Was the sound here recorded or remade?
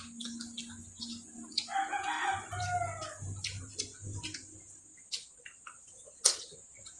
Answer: recorded